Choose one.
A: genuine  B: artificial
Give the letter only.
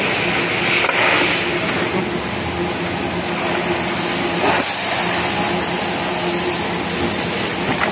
A